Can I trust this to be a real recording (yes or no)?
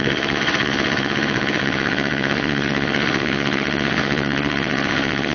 no